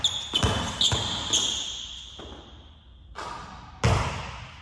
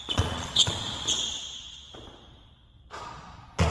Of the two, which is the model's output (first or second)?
second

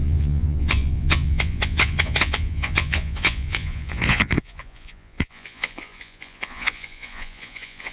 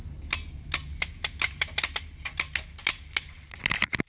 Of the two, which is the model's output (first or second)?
first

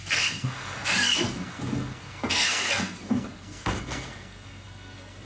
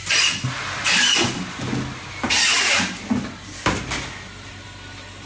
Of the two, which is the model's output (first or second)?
first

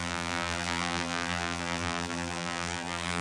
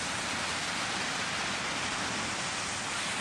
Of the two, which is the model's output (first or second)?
first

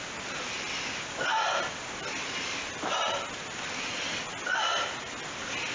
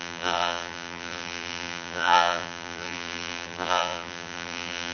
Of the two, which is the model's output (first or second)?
second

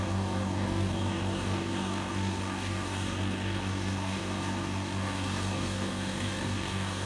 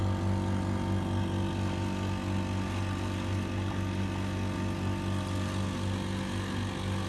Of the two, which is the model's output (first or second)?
first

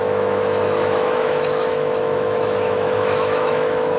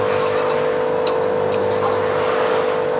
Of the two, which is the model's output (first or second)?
first